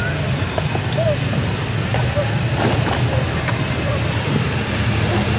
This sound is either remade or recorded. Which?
recorded